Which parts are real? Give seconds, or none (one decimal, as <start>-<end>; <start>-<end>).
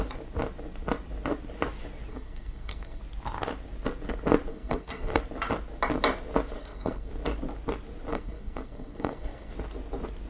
0.0-2.1; 3.0-4.5; 5.2-6.6; 7.1-8.1; 9.5-10.3